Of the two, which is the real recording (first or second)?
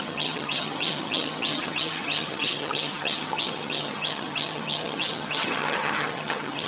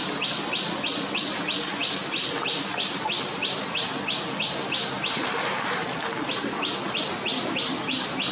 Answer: second